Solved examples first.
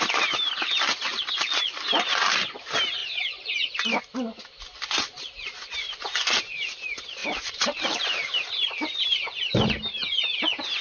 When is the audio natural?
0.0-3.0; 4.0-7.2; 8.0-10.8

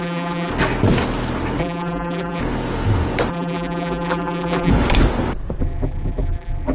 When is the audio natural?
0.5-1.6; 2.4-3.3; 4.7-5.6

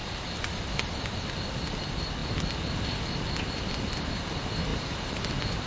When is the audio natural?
1.8-4.7; 5.3-5.7

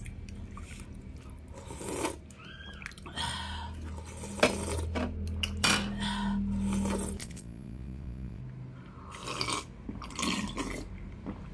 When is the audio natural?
0.0-7.2; 8.4-11.5